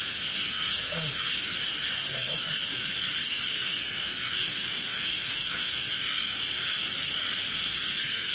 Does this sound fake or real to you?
fake